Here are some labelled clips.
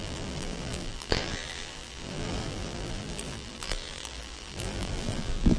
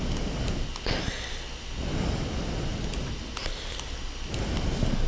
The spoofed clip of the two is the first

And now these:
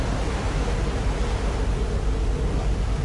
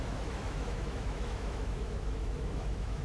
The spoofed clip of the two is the second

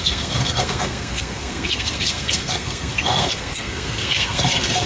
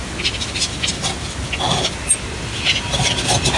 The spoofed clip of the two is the first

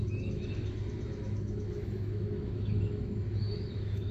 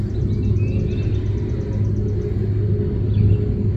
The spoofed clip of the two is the first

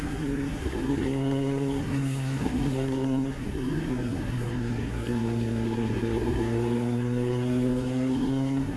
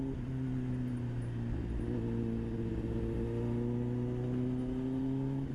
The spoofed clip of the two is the first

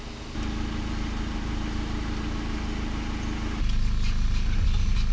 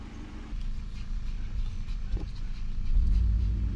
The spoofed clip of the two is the second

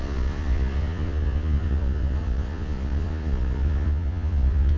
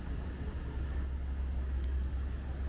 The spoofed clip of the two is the first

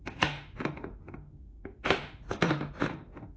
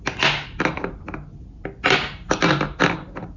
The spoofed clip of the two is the first